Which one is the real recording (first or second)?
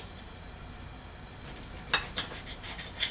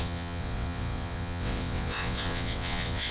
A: first